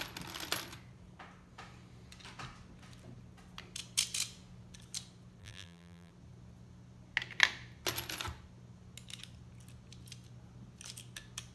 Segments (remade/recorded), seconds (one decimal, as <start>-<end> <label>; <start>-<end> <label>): 0.0-5.4 recorded; 5.4-6.1 remade; 6.1-11.5 recorded